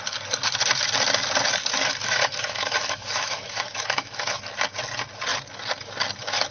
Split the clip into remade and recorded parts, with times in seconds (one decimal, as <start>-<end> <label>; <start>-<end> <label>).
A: 0.0-2.0 recorded; 2.0-4.4 remade; 4.4-6.5 recorded